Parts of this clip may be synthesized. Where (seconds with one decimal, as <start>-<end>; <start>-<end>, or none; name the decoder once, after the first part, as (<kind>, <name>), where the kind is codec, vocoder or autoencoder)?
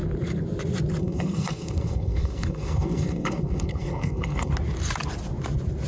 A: 1.0-4.5 (codec, SNAC)